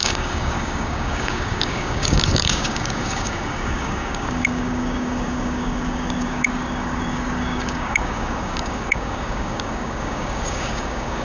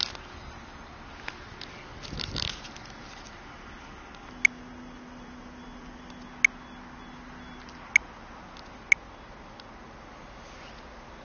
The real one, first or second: second